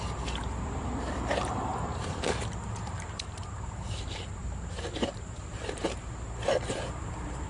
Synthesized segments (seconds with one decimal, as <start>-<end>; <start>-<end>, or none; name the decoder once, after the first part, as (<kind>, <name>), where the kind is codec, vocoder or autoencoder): 0.0-7.5 (vocoder, BigVGAN v2)